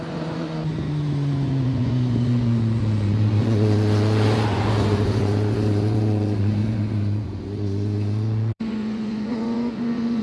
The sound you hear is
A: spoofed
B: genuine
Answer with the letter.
A